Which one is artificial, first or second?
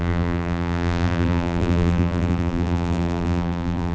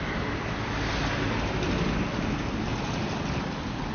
first